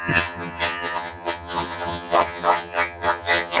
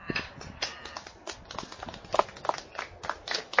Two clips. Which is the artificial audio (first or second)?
first